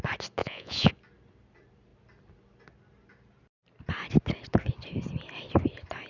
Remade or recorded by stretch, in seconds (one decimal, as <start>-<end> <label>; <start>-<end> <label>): 0.0-0.4 recorded; 0.4-0.9 remade; 0.9-6.1 recorded